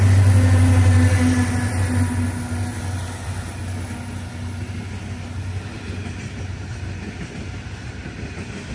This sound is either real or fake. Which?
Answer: real